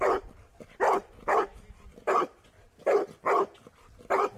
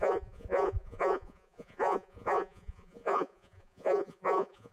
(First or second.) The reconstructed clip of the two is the second